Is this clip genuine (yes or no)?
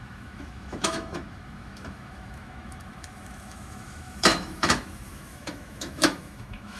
no